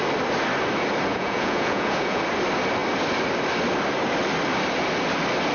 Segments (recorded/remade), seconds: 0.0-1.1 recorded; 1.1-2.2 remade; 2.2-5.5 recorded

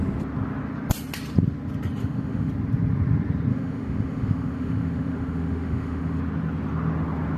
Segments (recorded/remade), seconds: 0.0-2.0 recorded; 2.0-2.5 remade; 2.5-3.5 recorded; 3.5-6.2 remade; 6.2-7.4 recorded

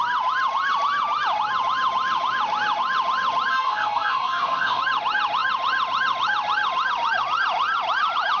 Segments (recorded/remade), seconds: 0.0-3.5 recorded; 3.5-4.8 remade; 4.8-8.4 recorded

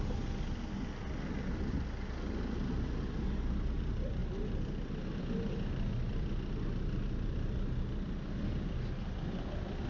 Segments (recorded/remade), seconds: 0.0-9.9 recorded